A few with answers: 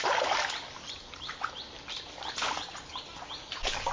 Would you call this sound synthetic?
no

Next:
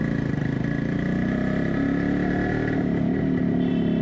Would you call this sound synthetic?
no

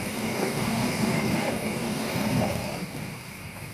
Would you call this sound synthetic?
yes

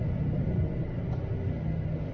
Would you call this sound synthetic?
no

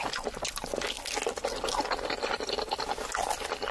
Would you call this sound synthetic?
no